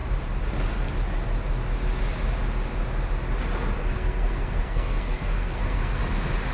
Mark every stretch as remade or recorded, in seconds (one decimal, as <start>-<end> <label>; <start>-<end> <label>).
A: 0.0-3.8 recorded; 3.8-6.0 remade; 6.0-6.5 recorded